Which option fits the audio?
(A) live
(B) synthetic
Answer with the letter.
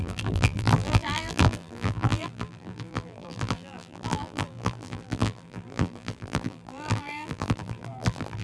B